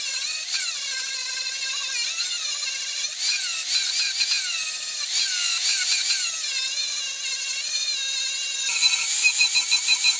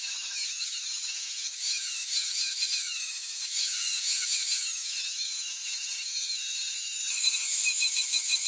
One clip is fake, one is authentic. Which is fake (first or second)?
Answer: second